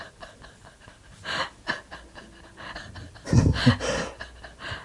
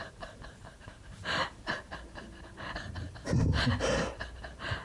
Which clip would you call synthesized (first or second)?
second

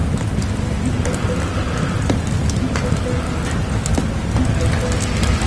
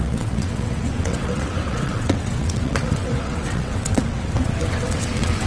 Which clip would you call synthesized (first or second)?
second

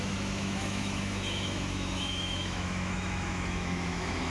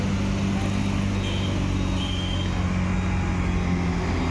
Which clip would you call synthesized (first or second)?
first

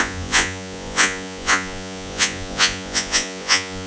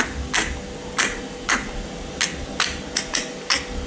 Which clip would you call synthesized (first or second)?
first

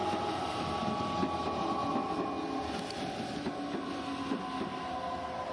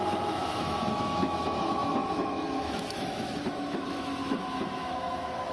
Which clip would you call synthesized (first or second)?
second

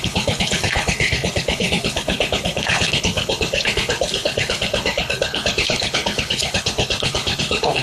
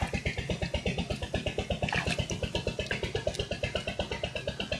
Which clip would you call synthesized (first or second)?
first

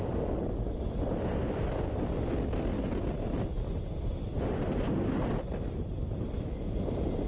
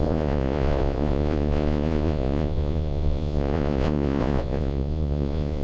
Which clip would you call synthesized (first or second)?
second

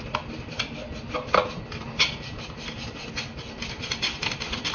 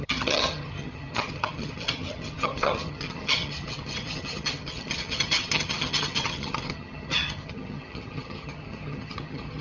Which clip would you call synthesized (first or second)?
second